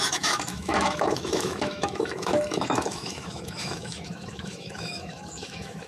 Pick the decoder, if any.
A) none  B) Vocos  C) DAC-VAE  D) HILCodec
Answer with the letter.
C